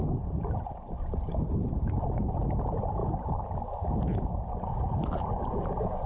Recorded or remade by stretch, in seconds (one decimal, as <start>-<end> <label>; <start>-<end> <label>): 0.0-6.1 recorded